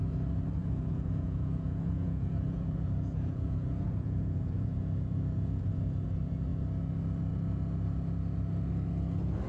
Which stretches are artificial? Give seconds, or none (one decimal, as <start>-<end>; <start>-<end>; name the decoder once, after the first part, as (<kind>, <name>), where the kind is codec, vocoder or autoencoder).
0.6-5.7 (vocoder, Vocos)